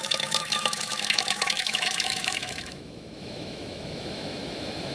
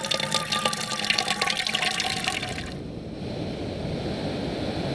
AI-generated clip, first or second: first